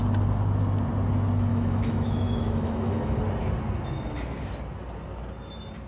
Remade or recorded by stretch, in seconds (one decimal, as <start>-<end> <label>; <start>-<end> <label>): 0.0-1.5 recorded; 1.5-3.2 remade; 3.2-5.9 recorded